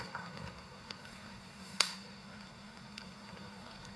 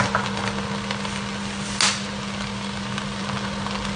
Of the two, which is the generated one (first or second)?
first